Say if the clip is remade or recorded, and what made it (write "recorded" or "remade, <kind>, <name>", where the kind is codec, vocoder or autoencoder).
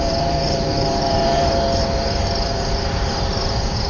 remade, vocoder, BigVGAN v2